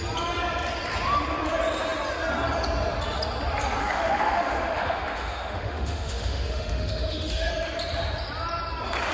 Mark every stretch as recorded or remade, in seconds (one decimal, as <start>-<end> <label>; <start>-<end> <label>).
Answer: 0.0-3.8 recorded; 3.8-7.5 remade; 7.5-9.1 recorded